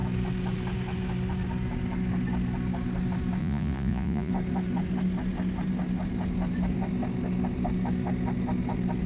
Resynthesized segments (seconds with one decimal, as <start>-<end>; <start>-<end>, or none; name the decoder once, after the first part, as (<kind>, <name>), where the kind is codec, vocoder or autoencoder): 3.4-4.3 (vocoder, Vocos)